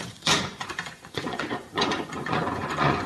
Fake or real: fake